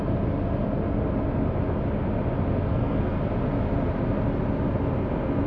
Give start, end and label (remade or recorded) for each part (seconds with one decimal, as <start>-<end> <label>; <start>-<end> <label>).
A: 0.0-2.7 recorded; 2.7-3.2 remade; 3.2-5.5 recorded